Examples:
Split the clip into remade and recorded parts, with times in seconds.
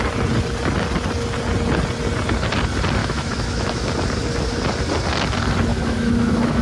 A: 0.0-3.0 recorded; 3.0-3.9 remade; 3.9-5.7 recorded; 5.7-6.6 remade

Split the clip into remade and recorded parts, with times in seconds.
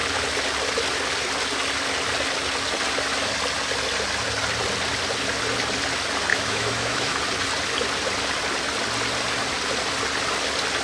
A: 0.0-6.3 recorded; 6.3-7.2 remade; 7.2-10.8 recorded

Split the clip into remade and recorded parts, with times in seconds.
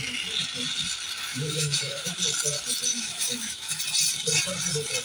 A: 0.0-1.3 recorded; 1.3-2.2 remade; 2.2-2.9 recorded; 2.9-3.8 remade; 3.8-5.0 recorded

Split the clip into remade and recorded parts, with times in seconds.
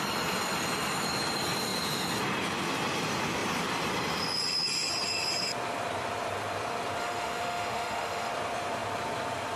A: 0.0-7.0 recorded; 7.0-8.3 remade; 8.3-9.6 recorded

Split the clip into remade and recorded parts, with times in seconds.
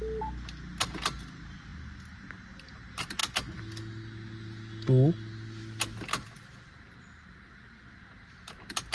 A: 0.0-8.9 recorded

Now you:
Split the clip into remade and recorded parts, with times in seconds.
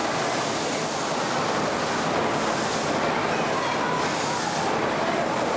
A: 0.0-5.6 recorded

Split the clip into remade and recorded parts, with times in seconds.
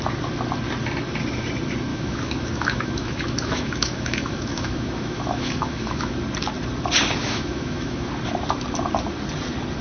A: 0.0-1.9 recorded; 1.9-6.1 remade; 6.1-7.2 recorded; 7.2-8.1 remade; 8.1-9.8 recorded